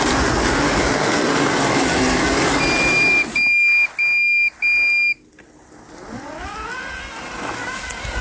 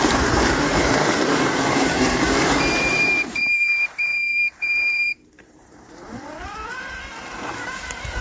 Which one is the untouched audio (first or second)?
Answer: first